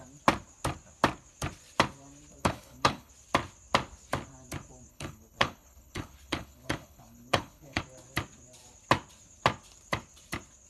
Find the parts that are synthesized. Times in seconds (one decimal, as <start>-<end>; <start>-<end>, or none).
2.4-3.1; 4.9-7.8